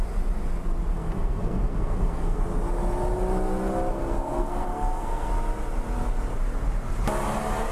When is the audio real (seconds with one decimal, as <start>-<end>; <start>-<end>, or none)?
0.0-0.9; 2.4-3.9; 5.3-7.7